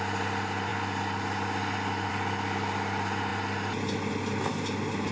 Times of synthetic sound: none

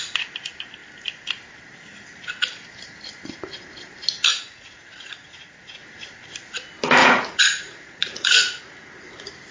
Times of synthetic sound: 4.3-5.8 (vocoder, Vocos); 7.0-8.6

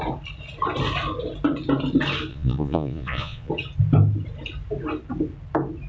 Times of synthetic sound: 2.3-3.5 (vocoder, Vocos)

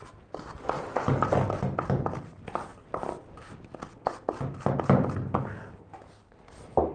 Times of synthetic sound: none

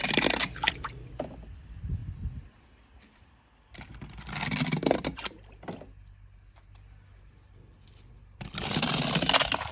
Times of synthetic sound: none